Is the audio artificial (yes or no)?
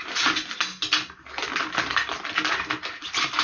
no